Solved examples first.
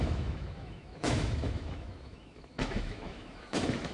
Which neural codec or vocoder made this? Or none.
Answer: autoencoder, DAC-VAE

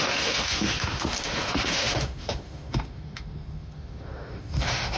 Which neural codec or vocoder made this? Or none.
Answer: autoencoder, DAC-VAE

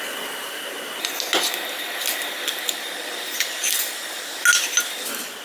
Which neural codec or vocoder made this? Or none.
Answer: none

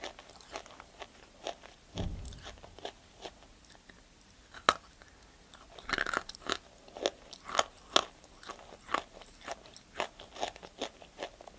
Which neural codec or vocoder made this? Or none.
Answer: none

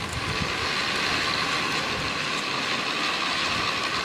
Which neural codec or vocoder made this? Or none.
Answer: none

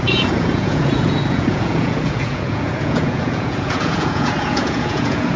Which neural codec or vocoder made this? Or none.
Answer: vocoder, Vocos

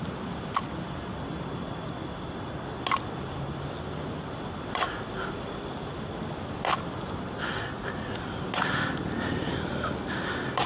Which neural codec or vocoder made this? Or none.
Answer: none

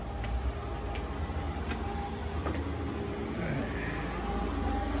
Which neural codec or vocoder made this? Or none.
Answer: none